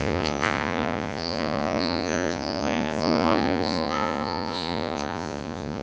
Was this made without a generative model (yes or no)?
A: no